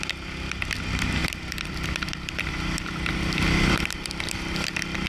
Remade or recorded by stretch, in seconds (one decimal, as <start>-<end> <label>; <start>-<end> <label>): 0.0-1.2 recorded; 1.2-4.3 remade; 4.3-5.1 recorded

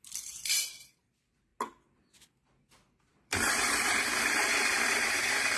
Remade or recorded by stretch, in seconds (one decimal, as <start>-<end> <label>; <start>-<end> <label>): 0.0-1.5 remade; 1.5-2.6 recorded; 2.6-5.6 remade

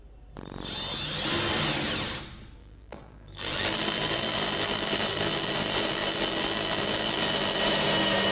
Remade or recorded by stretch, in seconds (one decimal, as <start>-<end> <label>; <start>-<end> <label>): 0.0-2.6 recorded; 2.6-7.6 remade; 7.6-8.3 recorded

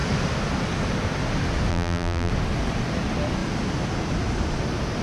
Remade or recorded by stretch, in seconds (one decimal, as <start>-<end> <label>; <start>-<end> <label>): 0.0-1.7 recorded; 1.7-2.3 remade; 2.3-5.0 recorded

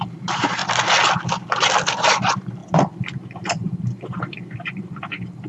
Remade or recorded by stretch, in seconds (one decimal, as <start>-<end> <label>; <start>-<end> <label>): 0.0-0.6 remade; 0.6-1.9 recorded; 1.9-2.6 remade; 2.6-3.3 recorded; 3.3-5.5 remade

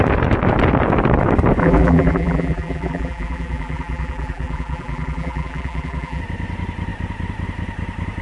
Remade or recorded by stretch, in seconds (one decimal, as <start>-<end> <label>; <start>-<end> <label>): 0.0-1.6 recorded; 1.6-6.2 remade; 6.2-8.2 recorded

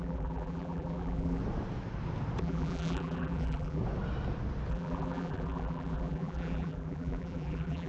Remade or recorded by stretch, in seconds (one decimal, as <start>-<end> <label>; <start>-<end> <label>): 0.0-1.4 remade; 1.4-2.4 recorded; 2.4-3.8 remade; 3.8-4.7 recorded; 4.7-7.9 remade